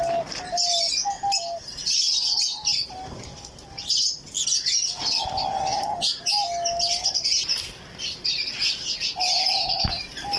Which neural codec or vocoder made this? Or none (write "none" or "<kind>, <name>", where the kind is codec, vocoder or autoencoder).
none